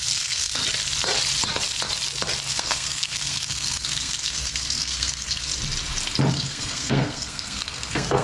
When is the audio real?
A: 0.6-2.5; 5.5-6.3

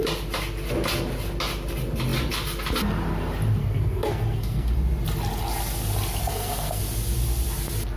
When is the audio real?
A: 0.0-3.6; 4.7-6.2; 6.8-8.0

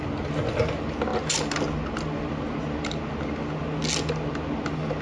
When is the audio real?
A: 0.0-5.0

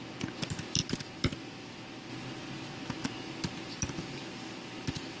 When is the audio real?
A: 0.0-5.2

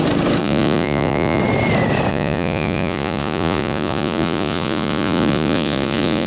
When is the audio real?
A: 0.0-0.4; 1.4-2.1